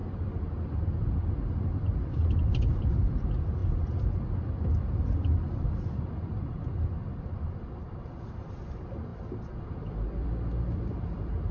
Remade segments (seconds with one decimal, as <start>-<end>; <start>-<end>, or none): 1.3-11.5